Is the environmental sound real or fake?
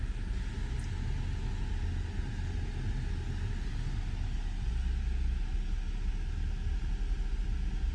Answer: real